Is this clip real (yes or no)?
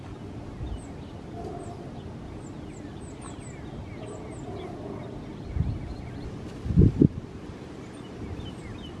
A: yes